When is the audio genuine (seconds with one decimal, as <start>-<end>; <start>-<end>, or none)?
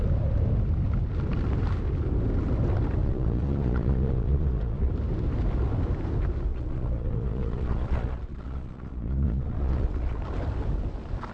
0.0-3.0; 4.9-6.5; 10.2-11.3